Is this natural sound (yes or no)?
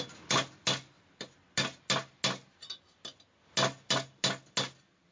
yes